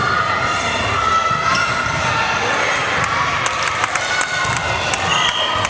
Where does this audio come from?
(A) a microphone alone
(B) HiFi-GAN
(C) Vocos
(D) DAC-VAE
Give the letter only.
A